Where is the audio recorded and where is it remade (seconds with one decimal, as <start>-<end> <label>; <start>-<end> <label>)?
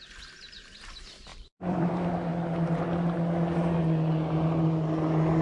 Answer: 0.0-1.3 recorded; 1.3-1.9 remade; 1.9-5.4 recorded